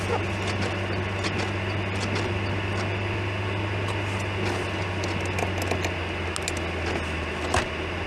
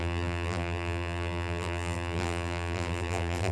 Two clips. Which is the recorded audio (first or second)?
first